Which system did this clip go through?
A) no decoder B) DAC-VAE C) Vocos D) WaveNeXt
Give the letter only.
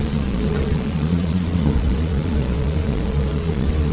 C